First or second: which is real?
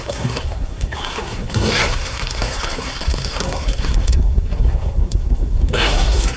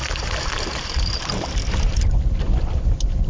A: second